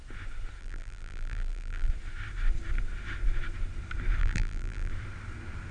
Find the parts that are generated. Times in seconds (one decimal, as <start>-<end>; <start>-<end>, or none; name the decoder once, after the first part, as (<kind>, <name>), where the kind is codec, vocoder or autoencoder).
0.6-1.9 (vocoder, BigVGAN v2); 4.2-4.9